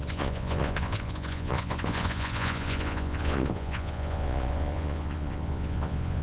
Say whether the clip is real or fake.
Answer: fake